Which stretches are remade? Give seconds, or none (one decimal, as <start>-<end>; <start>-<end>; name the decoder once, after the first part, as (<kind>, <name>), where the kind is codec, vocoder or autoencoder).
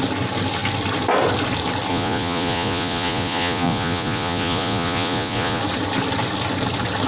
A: 1.9-5.6 (vocoder, Vocos)